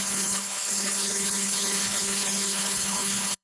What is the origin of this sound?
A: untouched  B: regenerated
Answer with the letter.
B